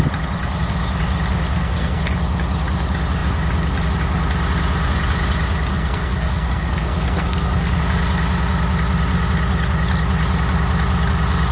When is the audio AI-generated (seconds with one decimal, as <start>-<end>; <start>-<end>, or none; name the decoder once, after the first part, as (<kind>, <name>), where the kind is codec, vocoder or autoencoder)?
1.5-2.0 (codec, SNAC); 5.7-7.8